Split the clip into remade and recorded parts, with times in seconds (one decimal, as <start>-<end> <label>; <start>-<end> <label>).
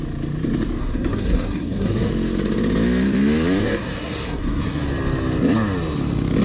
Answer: 0.0-0.8 recorded; 0.8-2.1 remade; 2.1-3.6 recorded; 3.6-4.8 remade; 4.8-6.4 recorded